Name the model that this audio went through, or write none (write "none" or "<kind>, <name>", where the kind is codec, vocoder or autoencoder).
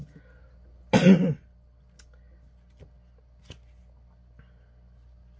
none